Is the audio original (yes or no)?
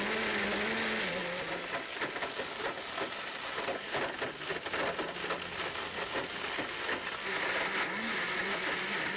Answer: yes